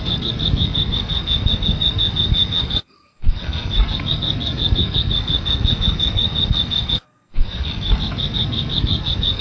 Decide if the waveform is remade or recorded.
remade